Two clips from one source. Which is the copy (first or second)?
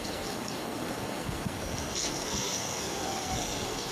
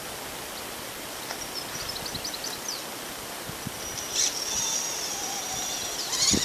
first